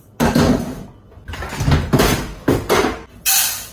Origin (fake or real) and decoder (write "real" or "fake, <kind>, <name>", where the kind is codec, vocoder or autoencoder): real